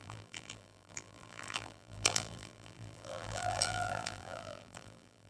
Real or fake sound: fake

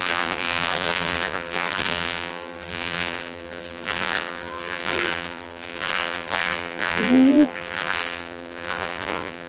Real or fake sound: fake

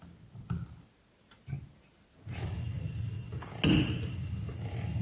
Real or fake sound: real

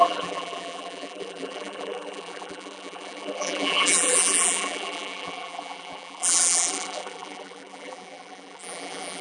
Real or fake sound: fake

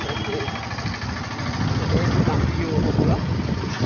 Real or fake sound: real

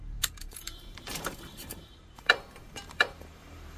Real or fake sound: fake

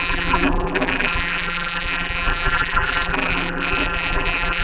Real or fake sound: fake